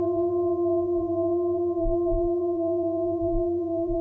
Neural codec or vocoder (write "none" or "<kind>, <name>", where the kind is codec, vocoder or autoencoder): vocoder, BigVGAN v2